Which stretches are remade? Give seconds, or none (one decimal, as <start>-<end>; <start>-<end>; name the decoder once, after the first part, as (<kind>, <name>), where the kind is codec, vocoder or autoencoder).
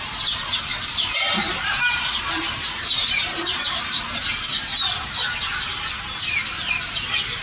0.7-5.1 (vocoder, BigVGAN v2)